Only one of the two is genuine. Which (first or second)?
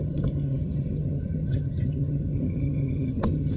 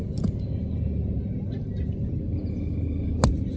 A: second